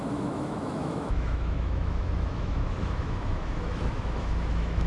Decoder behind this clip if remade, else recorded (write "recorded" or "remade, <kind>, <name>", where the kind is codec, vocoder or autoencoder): remade, autoencoder, DAC-VAE